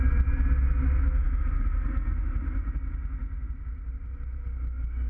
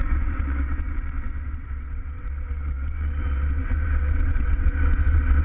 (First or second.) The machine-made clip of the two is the second